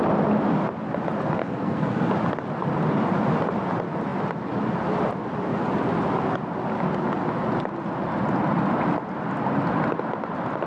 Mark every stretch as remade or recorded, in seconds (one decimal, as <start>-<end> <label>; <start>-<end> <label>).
0.0-1.4 recorded; 1.4-2.1 remade; 2.1-10.7 recorded